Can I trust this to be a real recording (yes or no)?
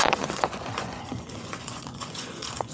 no